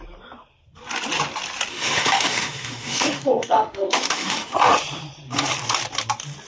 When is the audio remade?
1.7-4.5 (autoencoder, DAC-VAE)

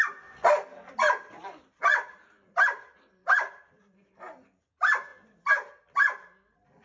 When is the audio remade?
3.2-4.2 (vocoder, BigVGAN v2)

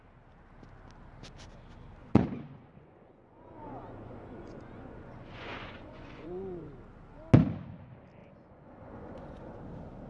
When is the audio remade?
2.0-6.7 (vocoder, Vocos); 8.2-9.6

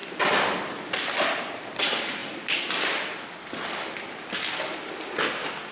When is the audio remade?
none

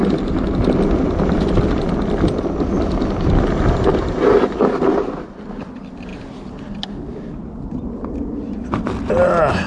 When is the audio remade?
none

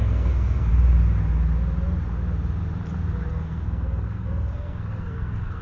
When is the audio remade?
0.0-0.7 (codec, SNAC); 3.3-5.6

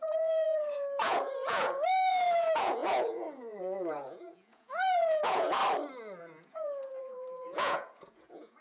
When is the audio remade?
0.0-5.6 (vocoder, Vocos); 6.2-8.6

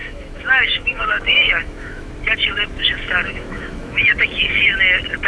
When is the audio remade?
0.0-2.1 (autoencoder, DAC-VAE); 2.8-4.6